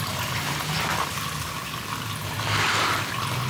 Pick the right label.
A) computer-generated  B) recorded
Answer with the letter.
B